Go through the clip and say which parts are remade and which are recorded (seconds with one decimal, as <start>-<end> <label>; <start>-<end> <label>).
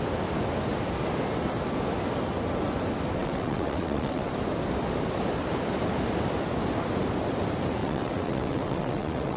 0.0-3.2 recorded; 3.2-4.3 remade; 4.3-7.8 recorded; 7.8-9.4 remade